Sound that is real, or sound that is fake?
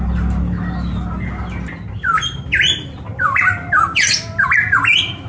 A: real